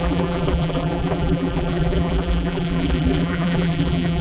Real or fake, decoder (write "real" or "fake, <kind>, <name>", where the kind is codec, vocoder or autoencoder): fake, vocoder, BigVGAN v2